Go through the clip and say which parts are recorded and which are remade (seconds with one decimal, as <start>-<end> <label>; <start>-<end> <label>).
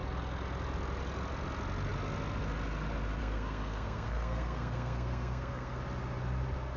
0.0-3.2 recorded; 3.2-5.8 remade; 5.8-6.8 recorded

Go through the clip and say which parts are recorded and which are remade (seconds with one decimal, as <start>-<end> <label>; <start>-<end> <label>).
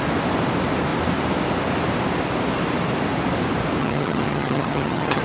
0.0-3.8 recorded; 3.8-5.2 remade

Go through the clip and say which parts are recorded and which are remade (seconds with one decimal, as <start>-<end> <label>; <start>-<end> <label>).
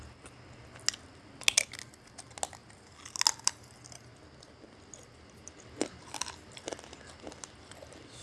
0.0-8.2 recorded